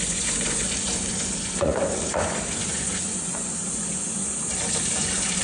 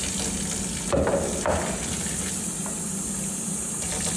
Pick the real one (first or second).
second